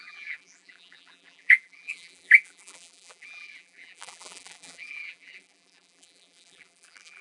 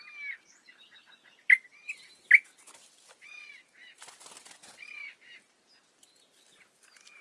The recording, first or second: second